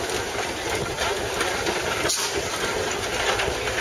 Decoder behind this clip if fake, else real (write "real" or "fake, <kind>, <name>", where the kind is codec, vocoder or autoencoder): real